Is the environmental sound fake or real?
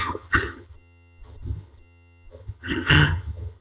fake